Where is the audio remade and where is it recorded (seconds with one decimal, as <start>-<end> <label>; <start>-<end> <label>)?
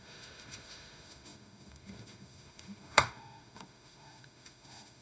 0.0-5.0 remade